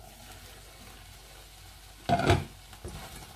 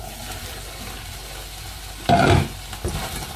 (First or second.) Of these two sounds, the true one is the first